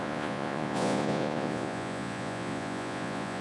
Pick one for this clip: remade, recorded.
remade